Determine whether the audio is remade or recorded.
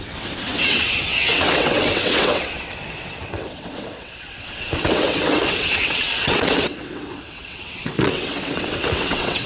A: remade